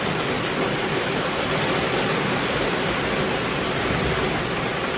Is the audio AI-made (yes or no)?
no